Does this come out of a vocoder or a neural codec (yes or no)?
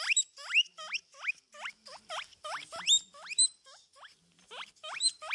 no